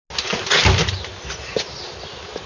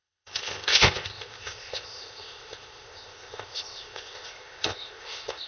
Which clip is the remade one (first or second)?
second